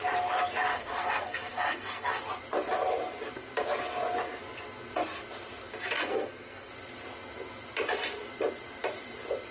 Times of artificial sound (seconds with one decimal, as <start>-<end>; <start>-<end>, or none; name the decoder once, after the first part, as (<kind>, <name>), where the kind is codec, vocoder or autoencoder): 0.7-2.2 (codec, SNAC); 6.0-6.7